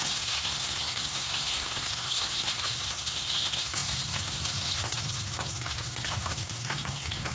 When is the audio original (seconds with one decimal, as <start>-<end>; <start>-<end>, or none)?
none